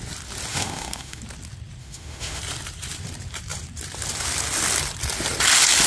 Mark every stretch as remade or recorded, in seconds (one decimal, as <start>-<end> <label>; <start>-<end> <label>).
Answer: 0.0-0.5 recorded; 0.5-1.2 remade; 1.2-1.8 recorded; 1.8-2.4 remade; 2.4-5.9 recorded